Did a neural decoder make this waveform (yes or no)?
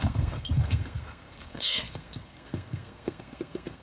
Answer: yes